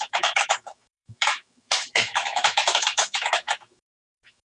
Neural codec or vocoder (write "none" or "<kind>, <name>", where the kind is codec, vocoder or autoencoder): autoencoder, DAC-VAE